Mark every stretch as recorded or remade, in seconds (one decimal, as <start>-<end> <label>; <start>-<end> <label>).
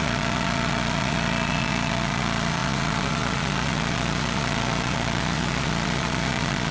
0.0-6.7 remade